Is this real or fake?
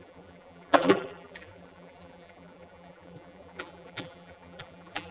fake